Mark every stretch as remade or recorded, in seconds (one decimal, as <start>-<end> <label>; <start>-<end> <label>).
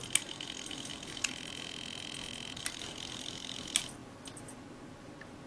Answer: 0.0-5.5 recorded